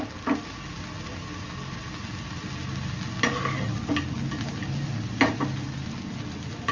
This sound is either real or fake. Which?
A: real